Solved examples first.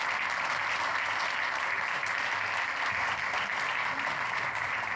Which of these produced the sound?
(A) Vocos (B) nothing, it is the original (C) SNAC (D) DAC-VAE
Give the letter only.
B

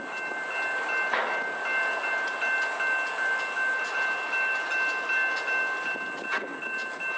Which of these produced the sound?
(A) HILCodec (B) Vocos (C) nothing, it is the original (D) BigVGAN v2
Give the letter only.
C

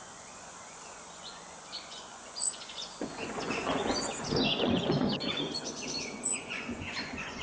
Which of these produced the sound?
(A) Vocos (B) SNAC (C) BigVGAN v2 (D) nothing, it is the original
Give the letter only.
A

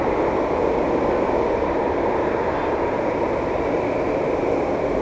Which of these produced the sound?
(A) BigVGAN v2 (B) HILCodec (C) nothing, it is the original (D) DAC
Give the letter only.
C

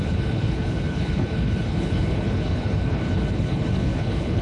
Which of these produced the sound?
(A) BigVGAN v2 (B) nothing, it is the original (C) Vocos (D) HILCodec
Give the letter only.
D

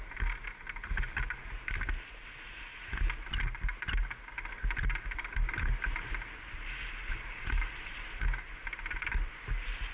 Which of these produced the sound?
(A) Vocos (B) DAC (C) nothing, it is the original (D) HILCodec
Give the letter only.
C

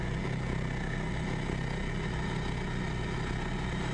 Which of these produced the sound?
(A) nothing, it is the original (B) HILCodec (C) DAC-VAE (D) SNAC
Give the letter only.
A